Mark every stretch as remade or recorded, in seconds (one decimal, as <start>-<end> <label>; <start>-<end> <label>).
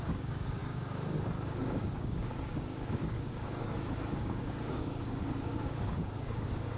0.0-6.8 remade